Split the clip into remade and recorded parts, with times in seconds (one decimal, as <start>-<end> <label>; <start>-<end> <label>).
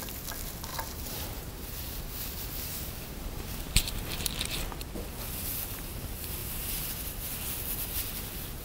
0.0-0.7 recorded; 0.7-2.0 remade; 2.0-2.7 recorded; 2.7-4.4 remade; 4.4-6.4 recorded; 6.4-6.9 remade; 6.9-8.6 recorded